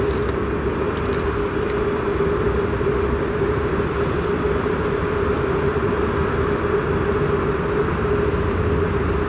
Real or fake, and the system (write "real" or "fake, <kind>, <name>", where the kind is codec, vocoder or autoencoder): real